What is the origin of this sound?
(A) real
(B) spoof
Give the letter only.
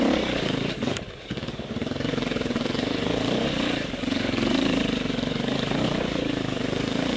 B